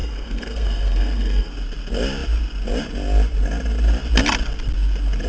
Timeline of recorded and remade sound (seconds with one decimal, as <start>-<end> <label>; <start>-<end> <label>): 0.0-1.5 remade; 1.5-5.3 recorded